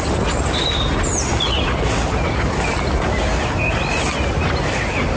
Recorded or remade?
recorded